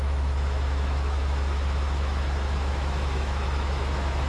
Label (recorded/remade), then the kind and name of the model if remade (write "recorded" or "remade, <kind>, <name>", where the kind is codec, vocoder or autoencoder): remade, autoencoder, DAC-VAE